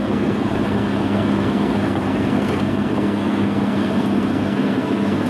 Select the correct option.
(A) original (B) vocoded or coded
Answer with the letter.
B